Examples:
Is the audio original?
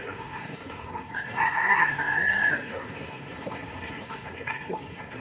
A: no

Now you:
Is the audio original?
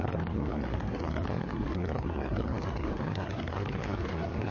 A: no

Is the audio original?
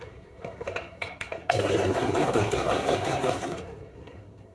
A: no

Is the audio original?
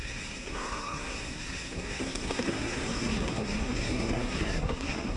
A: no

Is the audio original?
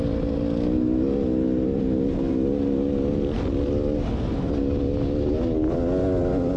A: yes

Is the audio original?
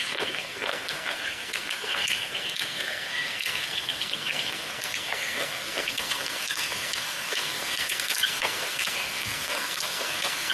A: no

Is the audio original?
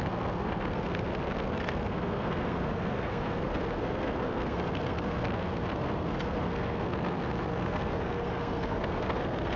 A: no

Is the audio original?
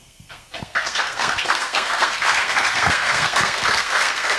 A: no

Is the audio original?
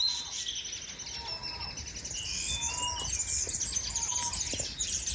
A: yes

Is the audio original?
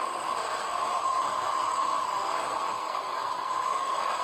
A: no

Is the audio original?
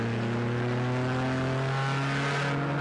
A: yes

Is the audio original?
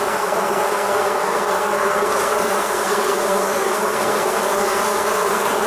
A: no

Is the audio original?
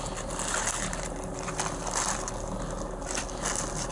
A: yes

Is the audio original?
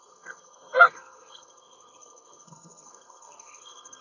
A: no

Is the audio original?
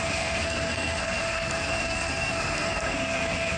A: no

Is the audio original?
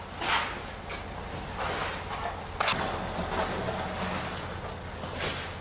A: yes